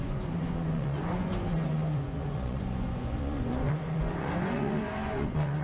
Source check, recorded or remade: remade